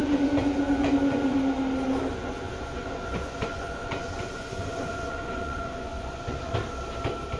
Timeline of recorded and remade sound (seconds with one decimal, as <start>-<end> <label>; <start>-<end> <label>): 0.0-1.4 remade; 1.4-2.1 recorded; 2.1-6.5 remade; 6.5-7.4 recorded